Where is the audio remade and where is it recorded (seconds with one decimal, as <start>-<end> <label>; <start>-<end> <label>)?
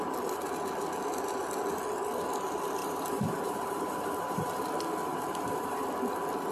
0.0-2.8 recorded; 2.8-4.6 remade; 4.6-5.0 recorded; 5.0-5.9 remade; 5.9-6.5 recorded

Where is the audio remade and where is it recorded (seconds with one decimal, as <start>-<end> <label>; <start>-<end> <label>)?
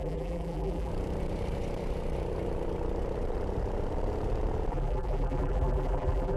0.0-0.9 remade; 0.9-4.7 recorded; 4.7-6.4 remade